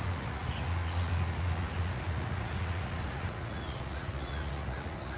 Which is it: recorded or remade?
remade